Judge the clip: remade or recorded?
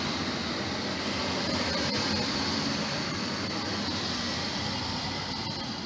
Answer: recorded